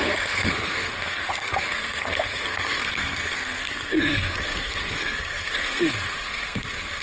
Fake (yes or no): yes